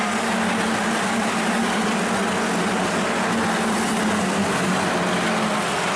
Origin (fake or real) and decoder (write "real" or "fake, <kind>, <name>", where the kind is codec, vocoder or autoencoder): real